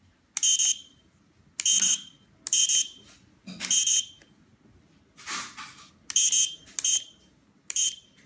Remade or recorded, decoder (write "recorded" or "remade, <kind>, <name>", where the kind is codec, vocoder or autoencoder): recorded